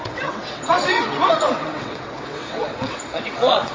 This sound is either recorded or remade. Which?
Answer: remade